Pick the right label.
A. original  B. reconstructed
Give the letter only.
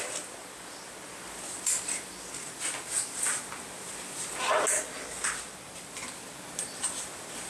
A